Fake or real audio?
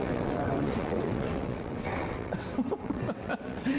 fake